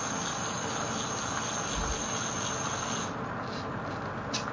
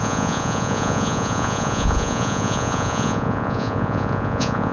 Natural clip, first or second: first